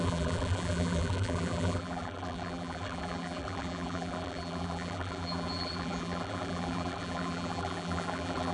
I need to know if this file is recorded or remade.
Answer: remade